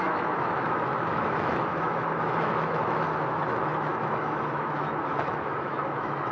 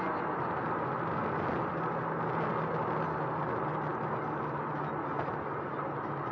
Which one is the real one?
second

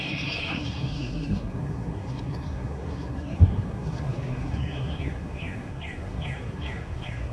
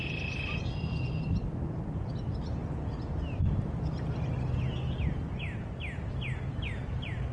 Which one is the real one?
second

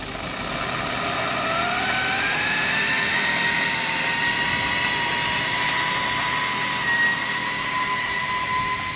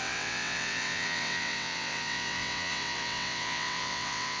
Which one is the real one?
first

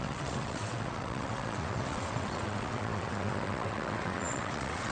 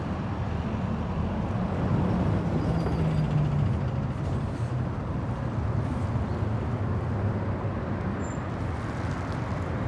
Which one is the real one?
second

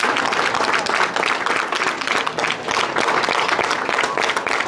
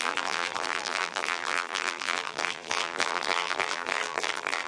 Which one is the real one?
first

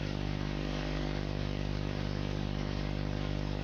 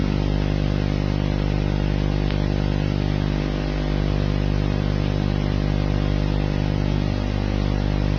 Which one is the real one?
second